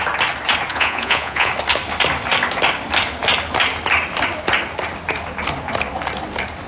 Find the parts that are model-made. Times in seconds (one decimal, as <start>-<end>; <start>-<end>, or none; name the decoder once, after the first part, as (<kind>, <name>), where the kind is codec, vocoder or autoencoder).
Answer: 0.7-1.5 (vocoder, Vocos)